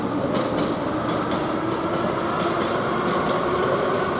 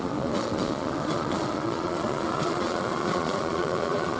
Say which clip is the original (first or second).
first